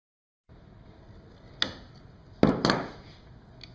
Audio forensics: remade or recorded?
recorded